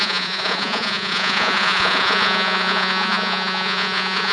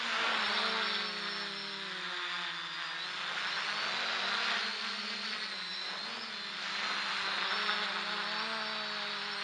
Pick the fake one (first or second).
first